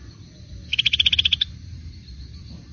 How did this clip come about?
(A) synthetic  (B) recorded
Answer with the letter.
B